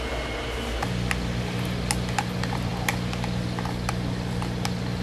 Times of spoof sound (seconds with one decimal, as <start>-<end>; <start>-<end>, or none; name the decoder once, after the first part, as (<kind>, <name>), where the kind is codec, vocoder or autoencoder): none